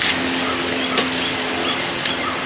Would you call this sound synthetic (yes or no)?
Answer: no